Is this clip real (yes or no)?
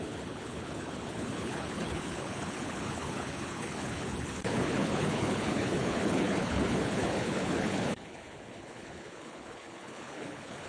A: no